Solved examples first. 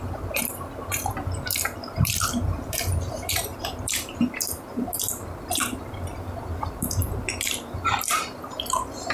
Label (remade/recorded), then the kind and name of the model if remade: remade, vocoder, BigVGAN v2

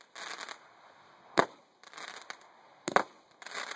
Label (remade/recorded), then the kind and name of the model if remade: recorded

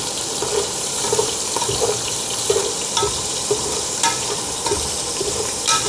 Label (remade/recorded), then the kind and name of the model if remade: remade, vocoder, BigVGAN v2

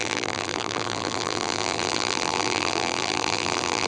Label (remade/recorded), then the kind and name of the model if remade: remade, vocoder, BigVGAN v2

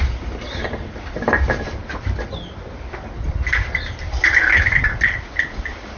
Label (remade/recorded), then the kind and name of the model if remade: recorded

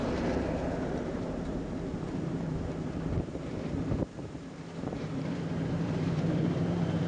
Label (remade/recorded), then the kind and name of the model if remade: remade, vocoder, BigVGAN v2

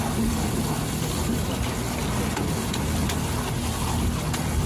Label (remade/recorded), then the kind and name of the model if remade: recorded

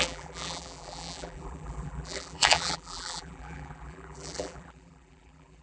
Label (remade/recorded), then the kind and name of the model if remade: remade, vocoder, BigVGAN v2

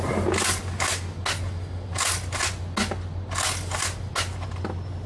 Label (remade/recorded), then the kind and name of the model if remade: recorded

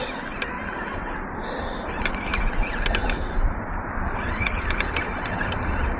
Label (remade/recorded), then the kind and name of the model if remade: recorded